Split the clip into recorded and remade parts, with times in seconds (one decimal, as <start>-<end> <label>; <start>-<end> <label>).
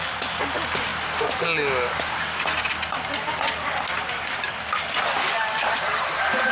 0.0-5.2 recorded; 5.2-5.7 remade; 5.7-6.5 recorded